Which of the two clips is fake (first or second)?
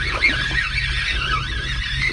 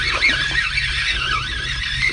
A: second